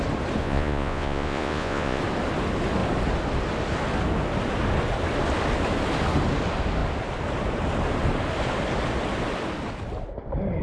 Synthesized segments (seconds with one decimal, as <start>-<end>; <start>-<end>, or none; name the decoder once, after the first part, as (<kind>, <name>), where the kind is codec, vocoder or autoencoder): 0.4-2.0 (vocoder, Vocos)